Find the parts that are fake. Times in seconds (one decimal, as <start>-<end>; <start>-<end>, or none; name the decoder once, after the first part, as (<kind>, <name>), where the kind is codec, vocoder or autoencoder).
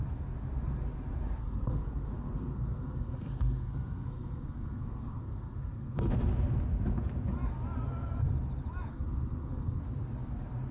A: 1.4-6.1 (codec, SNAC); 8.9-9.8